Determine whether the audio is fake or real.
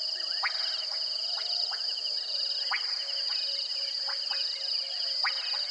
real